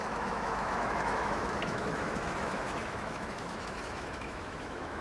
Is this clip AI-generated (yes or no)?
yes